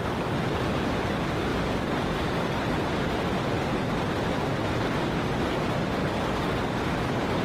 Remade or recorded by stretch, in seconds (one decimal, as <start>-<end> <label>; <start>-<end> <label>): 0.0-1.5 recorded; 1.5-2.6 remade; 2.6-6.0 recorded; 6.0-7.4 remade